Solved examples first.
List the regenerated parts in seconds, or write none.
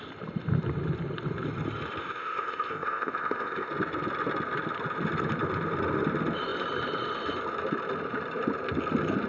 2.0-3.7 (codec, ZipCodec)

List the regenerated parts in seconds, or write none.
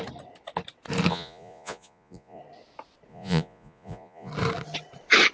1.1-2.4 (vocoder, Vocos); 3.1-4.3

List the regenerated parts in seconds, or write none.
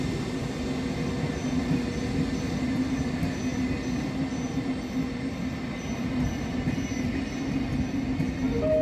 none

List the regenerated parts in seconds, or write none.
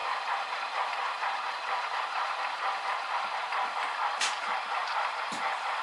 0.0-3.5 (vocoder, BigVGAN v2); 4.8-5.8